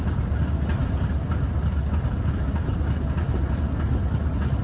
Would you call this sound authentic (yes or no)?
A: yes